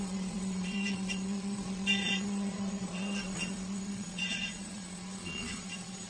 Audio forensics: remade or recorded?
remade